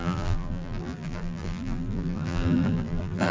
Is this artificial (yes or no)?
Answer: yes